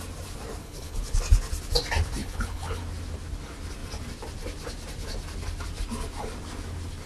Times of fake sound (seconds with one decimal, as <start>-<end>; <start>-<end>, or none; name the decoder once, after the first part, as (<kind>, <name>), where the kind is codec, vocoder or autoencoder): 0.6-1.2 (codec, HILCodec); 2.2-2.8